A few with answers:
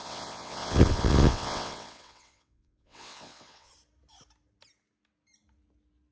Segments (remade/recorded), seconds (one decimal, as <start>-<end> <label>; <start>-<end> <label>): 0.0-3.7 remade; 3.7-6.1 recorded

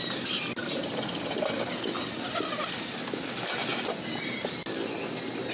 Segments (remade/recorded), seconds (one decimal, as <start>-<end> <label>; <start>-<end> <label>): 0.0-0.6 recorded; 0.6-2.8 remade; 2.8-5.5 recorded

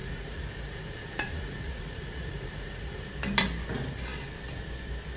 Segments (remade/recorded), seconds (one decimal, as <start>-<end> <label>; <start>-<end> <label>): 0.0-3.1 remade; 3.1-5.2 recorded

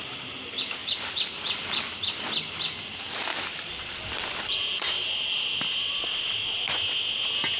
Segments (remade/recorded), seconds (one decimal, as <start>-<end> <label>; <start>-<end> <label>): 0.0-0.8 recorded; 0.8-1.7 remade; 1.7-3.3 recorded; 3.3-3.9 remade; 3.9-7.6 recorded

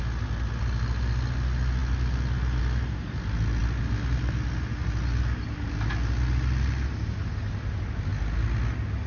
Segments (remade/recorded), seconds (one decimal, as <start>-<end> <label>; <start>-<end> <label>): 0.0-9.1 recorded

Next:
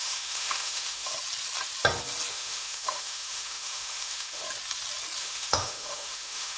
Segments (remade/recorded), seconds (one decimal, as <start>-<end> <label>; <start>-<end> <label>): 0.0-1.1 remade; 1.1-2.3 recorded; 2.3-4.4 remade; 4.4-5.2 recorded; 5.2-6.6 remade

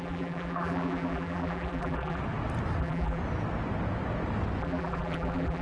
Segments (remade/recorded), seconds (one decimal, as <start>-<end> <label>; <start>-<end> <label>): 0.0-2.2 remade; 2.2-2.8 recorded; 2.8-3.2 remade; 3.2-4.6 recorded; 4.6-5.6 remade